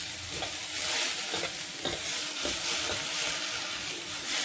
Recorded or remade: recorded